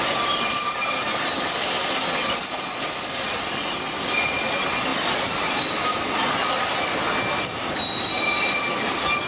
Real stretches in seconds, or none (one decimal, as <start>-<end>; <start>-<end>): 0.0-9.3